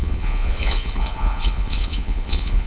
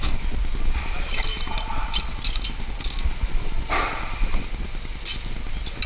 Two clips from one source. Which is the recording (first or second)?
second